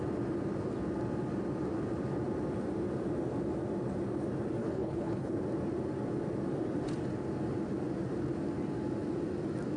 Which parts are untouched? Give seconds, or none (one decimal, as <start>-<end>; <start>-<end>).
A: 0.0-4.6; 5.4-9.8